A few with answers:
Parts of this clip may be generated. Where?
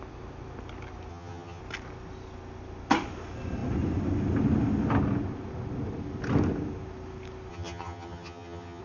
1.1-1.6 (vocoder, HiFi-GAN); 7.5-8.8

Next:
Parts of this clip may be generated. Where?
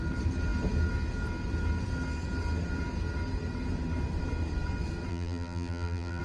5.1-6.2 (vocoder, BigVGAN v2)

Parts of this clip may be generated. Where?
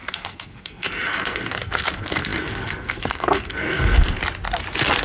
0.0-4.2 (codec, SNAC)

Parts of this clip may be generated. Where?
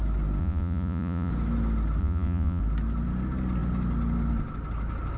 0.4-1.3 (vocoder, Vocos); 2.0-2.6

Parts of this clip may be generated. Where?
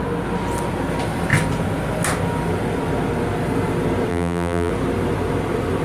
4.1-4.7 (vocoder, BigVGAN v2)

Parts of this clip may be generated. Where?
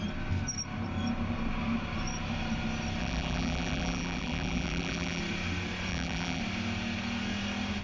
3.0-5.2 (vocoder, BigVGAN v2); 5.9-6.4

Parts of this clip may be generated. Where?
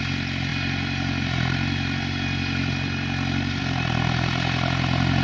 none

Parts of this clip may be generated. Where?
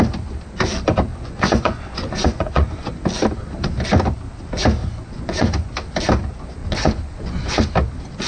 1.1-2.9 (vocoder, Vocos); 4.8-5.7; 6.6-7.7